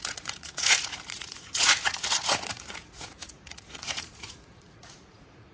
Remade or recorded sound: remade